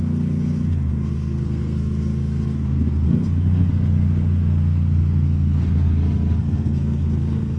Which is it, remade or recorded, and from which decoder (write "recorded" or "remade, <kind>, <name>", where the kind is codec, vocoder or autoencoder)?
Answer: remade, codec, SNAC